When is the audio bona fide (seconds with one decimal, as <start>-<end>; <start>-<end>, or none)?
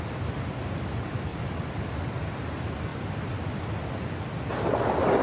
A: 0.0-1.3; 1.9-2.9; 3.9-5.2